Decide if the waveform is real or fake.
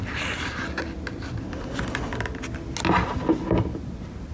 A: real